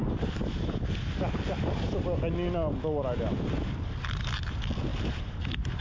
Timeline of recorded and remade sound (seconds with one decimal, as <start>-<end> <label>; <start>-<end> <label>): 0.0-4.9 recorded; 4.9-5.8 remade